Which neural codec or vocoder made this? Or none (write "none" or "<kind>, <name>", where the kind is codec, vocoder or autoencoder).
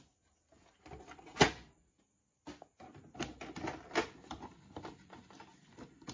none